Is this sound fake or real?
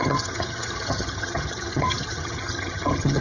fake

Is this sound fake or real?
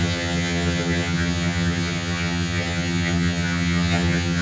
fake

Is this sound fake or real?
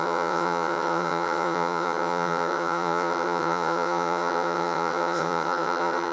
fake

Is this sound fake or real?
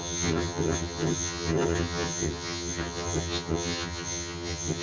fake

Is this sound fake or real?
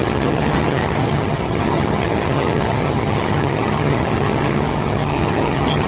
fake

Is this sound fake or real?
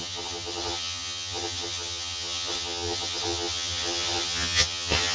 fake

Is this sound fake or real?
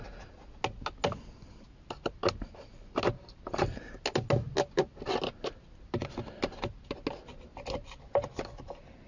real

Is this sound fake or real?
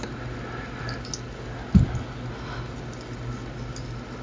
real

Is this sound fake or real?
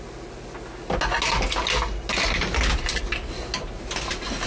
real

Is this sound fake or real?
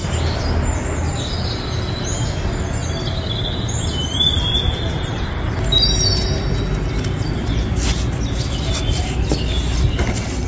real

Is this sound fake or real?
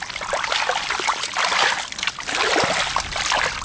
real